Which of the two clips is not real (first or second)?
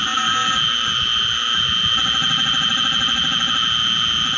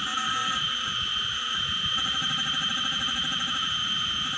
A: second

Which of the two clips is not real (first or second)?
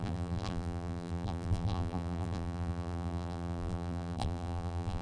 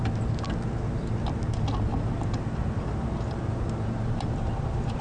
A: first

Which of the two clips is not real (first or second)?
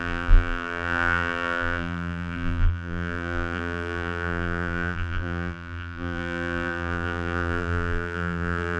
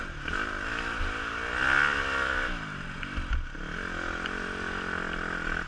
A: first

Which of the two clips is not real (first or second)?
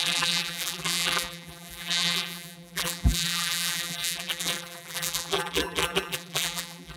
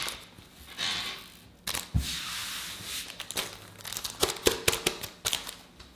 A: first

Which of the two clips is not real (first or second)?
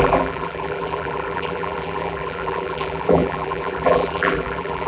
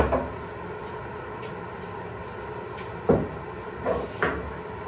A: first